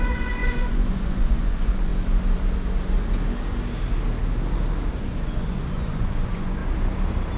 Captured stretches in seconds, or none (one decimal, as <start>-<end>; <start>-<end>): 1.9-4.9; 6.6-7.4